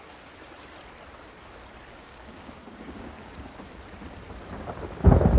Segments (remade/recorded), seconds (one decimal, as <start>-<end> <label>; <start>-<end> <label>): 0.0-1.9 recorded; 1.9-3.7 remade; 3.7-5.4 recorded